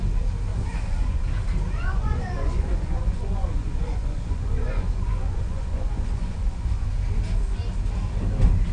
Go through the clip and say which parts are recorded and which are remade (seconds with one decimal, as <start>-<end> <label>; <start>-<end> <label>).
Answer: 0.0-0.5 recorded; 0.5-1.2 remade; 1.2-1.8 recorded; 1.8-6.9 remade; 6.9-8.7 recorded